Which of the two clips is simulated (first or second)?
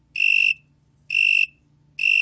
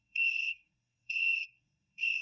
second